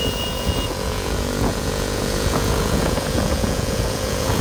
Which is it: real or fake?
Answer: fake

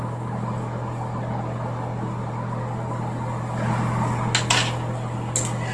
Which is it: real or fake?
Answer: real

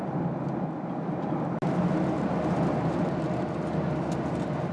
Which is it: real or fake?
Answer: real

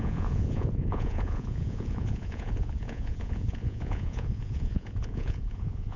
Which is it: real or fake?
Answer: fake